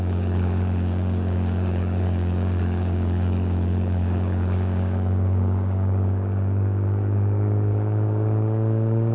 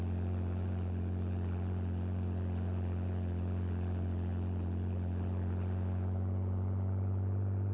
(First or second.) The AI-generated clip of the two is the first